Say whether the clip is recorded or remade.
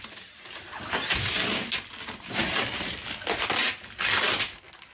recorded